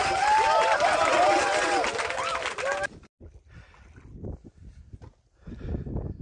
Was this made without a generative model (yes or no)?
yes